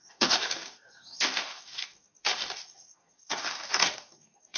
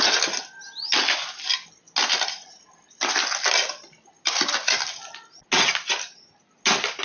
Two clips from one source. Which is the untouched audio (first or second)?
second